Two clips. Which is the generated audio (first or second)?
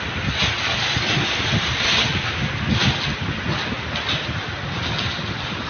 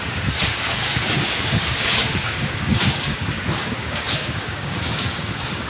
second